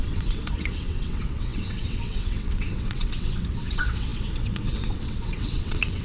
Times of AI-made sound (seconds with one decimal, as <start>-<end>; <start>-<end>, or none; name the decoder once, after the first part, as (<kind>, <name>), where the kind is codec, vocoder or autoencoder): 0.0-6.0 (vocoder, WaveNeXt)